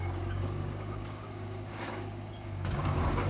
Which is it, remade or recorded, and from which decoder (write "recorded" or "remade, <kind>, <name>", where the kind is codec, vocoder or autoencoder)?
remade, codec, DAC